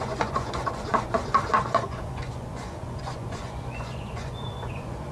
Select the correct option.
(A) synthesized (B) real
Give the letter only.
A